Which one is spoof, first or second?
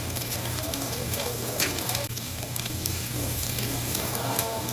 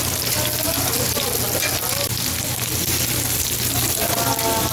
first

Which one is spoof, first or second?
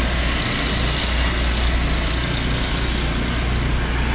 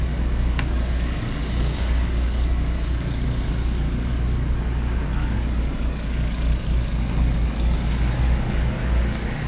second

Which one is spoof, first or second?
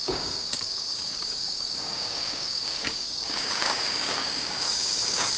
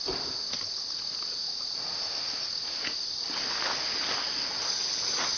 first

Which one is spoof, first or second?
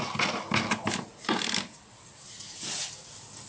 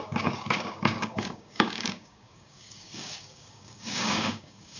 second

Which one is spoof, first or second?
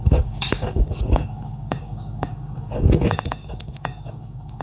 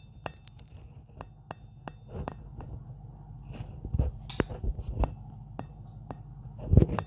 first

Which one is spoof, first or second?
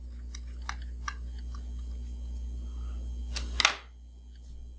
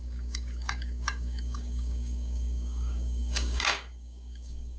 second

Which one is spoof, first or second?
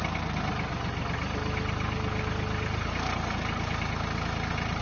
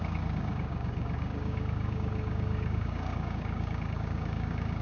second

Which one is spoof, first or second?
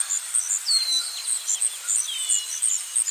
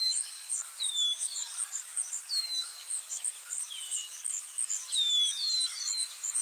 second